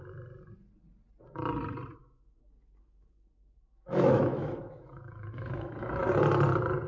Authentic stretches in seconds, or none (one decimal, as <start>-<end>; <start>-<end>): 0.0-2.0; 6.1-6.9